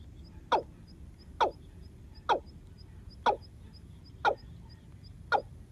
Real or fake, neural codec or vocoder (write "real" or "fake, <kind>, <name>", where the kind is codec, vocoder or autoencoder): real